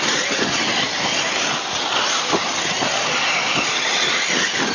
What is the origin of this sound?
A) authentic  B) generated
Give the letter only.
A